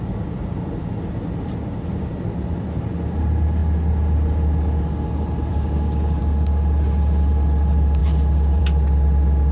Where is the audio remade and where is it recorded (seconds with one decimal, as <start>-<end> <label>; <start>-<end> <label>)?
0.0-5.5 recorded; 5.5-6.2 remade; 6.2-9.5 recorded